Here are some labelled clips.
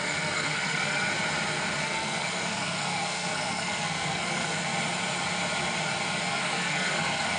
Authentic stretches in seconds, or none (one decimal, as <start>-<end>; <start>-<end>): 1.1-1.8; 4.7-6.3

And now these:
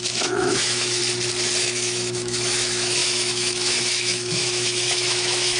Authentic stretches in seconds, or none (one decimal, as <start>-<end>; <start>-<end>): 1.0-1.6

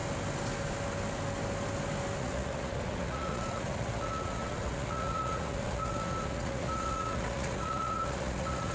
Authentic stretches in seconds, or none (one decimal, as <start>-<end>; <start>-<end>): 0.0-2.2

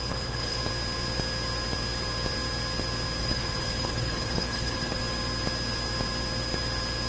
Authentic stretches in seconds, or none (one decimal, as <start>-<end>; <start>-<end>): 0.6-3.2; 5.0-7.1